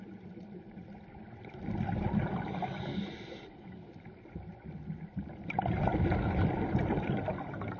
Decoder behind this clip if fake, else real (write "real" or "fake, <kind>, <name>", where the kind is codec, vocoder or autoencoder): real